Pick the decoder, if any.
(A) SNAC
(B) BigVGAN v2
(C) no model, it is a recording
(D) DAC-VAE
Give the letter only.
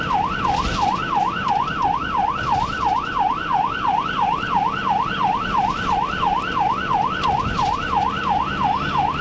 C